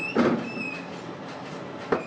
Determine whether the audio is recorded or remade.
recorded